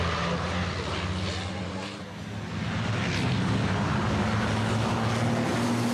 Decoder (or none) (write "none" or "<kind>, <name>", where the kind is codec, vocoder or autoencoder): none